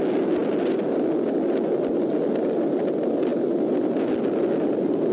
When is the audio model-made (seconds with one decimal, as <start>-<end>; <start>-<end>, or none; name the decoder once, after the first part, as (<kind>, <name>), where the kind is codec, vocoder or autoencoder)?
none